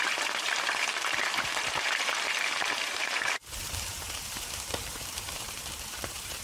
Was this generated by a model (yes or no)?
yes